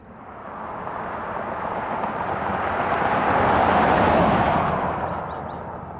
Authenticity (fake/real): real